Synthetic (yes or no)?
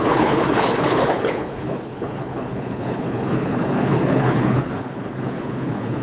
yes